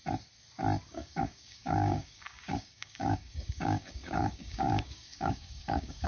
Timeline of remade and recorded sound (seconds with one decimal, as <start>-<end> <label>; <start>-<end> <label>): 0.0-0.9 recorded; 0.9-6.1 remade